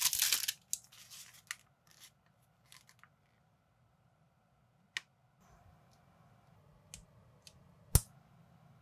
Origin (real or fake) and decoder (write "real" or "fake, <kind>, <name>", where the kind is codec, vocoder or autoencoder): real